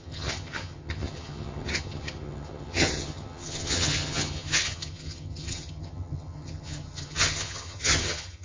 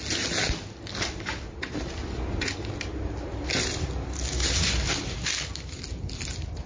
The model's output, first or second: first